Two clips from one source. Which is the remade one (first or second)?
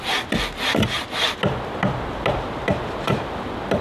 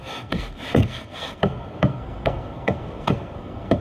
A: second